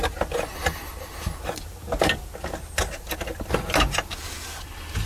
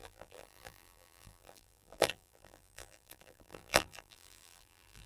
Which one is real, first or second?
first